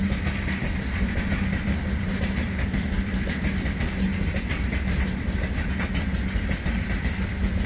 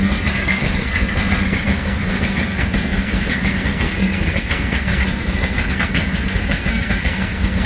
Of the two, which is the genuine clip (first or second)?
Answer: first